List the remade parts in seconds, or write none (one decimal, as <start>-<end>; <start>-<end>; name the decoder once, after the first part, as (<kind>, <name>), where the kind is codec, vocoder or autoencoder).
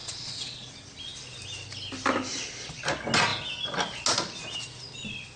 0.0-0.7 (vocoder, Vocos)